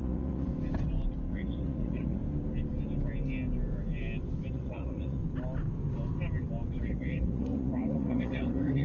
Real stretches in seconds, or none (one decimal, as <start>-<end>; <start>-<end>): 0.5-1.3; 2.2-4.5; 5.2-6.8